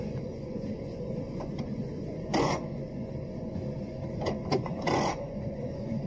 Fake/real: fake